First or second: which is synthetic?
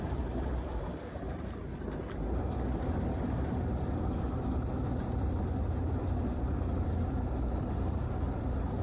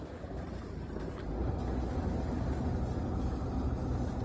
first